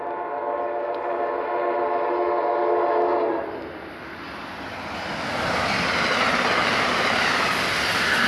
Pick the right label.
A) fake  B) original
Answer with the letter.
B